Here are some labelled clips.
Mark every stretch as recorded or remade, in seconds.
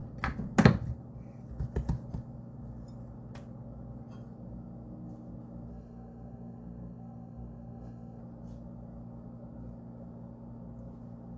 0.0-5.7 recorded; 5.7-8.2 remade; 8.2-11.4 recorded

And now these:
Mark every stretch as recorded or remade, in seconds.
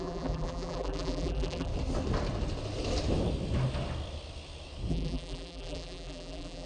0.0-1.7 remade; 1.7-4.9 recorded; 4.9-6.7 remade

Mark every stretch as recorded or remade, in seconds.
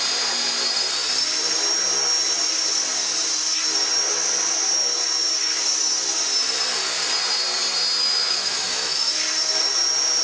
0.0-8.0 recorded; 8.0-9.1 remade; 9.1-10.2 recorded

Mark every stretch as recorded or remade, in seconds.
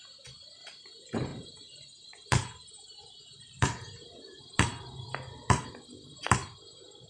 0.0-1.3 recorded; 1.3-4.4 remade; 4.4-7.1 recorded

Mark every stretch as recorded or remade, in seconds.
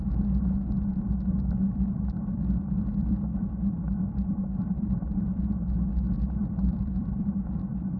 0.0-0.9 recorded; 0.9-5.4 remade; 5.4-6.4 recorded; 6.4-7.4 remade; 7.4-8.0 recorded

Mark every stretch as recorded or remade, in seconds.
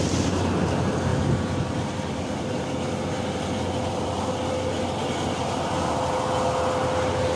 0.0-7.4 recorded